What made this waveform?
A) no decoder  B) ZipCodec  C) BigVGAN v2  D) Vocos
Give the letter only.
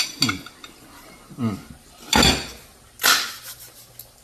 A